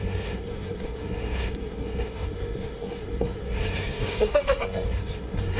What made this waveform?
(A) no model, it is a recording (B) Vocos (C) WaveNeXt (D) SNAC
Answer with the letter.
D